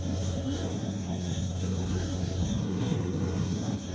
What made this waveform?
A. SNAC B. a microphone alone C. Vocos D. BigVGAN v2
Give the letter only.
A